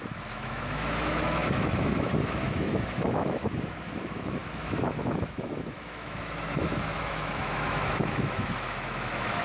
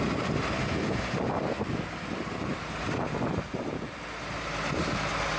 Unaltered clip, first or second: second